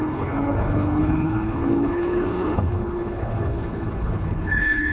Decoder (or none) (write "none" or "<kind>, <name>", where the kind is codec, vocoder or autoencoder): codec, HILCodec